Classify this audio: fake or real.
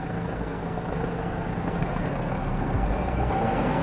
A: fake